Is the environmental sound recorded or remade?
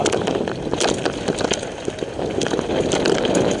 recorded